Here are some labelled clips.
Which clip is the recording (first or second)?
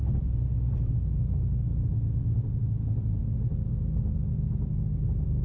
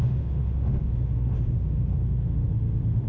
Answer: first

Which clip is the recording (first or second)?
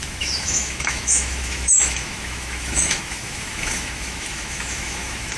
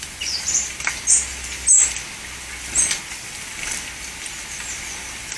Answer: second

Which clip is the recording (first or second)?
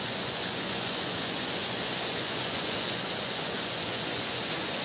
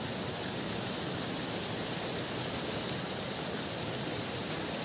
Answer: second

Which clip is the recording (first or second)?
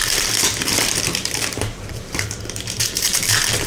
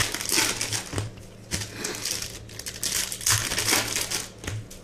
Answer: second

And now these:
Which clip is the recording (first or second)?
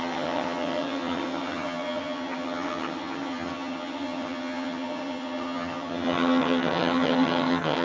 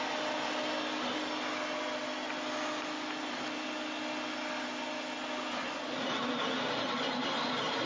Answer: second